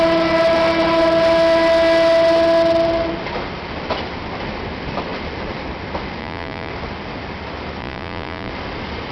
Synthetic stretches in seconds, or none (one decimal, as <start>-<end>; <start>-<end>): 6.2-6.7; 7.8-8.5